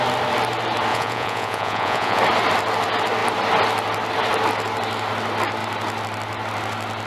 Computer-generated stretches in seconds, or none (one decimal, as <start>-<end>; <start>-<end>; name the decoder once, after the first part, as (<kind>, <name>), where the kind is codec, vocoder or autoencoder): 0.9-2.2 (vocoder, Vocos)